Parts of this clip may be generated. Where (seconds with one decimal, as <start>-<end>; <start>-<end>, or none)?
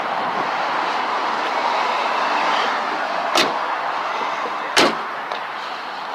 none